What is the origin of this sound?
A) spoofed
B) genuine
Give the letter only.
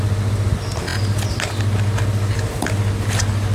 B